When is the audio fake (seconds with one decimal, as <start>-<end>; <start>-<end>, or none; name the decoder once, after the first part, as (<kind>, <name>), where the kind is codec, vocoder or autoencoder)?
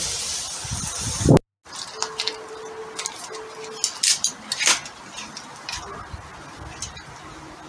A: none